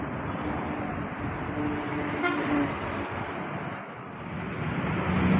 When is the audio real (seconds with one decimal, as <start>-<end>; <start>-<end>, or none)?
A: 0.0-5.4

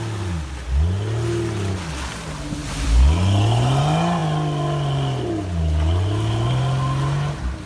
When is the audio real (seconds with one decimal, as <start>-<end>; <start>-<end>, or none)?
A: 0.0-7.7

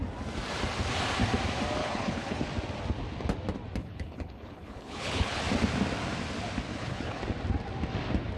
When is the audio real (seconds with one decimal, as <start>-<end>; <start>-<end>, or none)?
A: 0.0-1.8; 2.4-3.8; 5.4-6.7; 7.2-8.4

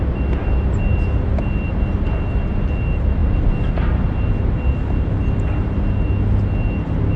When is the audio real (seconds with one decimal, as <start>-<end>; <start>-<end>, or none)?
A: 0.0-7.2

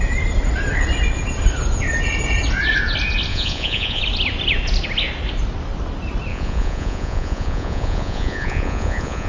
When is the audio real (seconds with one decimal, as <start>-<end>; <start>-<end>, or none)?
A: 0.0-3.3; 4.0-6.3

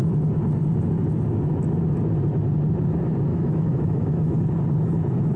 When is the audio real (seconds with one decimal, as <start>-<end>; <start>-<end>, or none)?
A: 0.0-3.3; 4.4-5.4

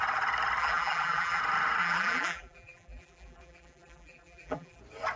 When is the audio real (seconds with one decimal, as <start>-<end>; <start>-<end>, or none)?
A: 0.0-0.6; 1.4-1.8; 4.8-5.2